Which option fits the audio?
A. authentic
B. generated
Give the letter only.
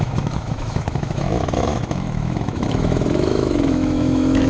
B